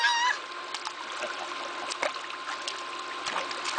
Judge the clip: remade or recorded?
recorded